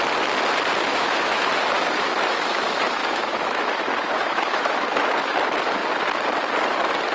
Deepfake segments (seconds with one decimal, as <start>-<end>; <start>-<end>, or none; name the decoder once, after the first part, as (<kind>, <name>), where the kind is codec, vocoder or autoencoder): 0.9-5.2 (autoencoder, DAC-VAE)

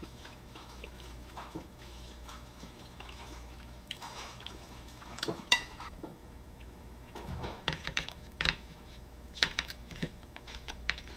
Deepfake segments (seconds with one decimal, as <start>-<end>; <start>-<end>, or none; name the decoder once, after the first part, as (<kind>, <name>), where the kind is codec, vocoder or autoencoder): 0.0-11.2 (autoencoder, DAC-VAE)

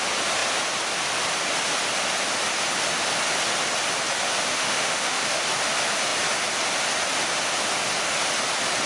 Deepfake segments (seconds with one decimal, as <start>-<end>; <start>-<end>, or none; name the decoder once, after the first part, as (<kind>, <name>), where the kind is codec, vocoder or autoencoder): 4.5-5.4 (autoencoder, DAC-VAE)

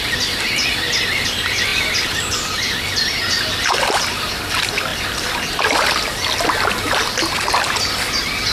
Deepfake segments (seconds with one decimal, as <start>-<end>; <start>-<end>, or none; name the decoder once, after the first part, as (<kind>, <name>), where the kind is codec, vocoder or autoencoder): none

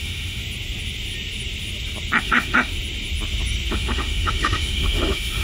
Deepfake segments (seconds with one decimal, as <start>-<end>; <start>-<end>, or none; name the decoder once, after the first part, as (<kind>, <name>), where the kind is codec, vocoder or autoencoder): 0.0-0.4 (autoencoder, DAC-VAE); 2.2-2.7; 3.7-5.4